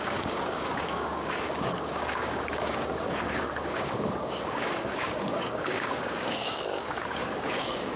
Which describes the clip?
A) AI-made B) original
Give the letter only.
A